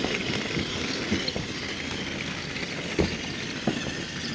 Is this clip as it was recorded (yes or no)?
yes